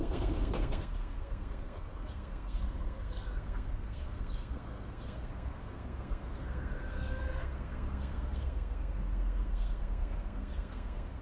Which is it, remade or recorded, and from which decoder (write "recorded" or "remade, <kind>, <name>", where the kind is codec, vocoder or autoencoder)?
remade, codec, SNAC